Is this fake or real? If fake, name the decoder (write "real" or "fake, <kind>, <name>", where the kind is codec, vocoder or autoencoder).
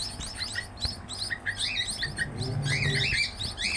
real